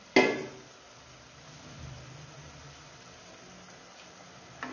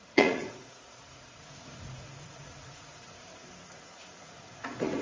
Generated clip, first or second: second